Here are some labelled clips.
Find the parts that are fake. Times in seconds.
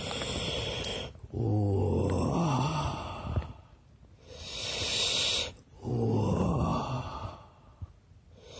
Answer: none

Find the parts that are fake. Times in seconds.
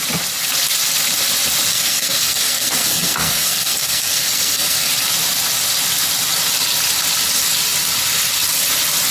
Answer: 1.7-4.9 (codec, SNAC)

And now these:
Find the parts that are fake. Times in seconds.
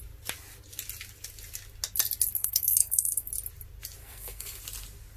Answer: 2.4-3.3 (codec, SNAC); 4.0-4.6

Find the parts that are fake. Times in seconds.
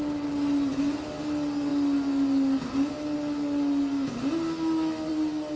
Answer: none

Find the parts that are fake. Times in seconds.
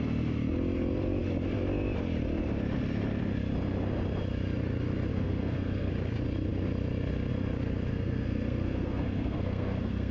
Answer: 5.1-5.9 (codec, SNAC); 7.9-10.1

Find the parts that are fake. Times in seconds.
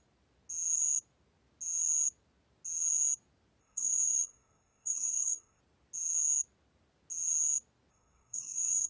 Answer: 3.6-5.6 (codec, SNAC); 7.9-8.9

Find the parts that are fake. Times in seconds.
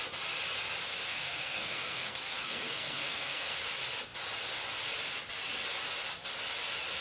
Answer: 1.1-3.6 (codec, SNAC)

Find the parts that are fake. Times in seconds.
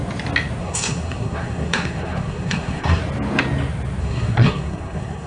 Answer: 0.6-3.0 (codec, SNAC); 4.0-5.3